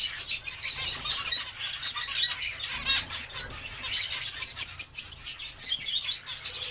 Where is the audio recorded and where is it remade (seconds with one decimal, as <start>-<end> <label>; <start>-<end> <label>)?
0.0-6.7 recorded